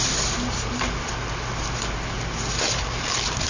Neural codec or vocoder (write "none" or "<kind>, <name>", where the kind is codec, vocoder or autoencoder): none